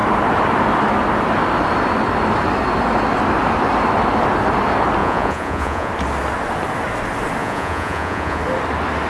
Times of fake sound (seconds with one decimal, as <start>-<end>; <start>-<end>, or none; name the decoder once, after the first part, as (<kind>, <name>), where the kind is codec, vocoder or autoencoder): 5.0-5.9 (vocoder, Vocos); 7.4-8.4